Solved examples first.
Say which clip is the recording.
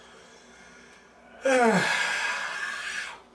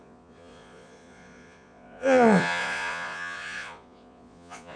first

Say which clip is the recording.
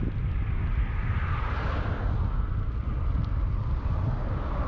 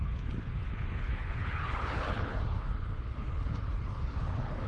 first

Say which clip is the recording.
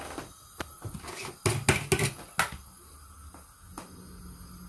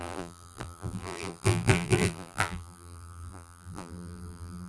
first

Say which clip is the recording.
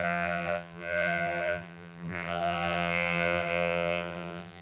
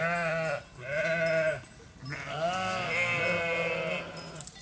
second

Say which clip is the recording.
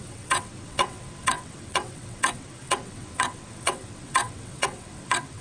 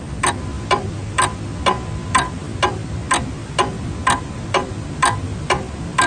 second